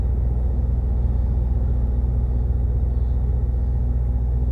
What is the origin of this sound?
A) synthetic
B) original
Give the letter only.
B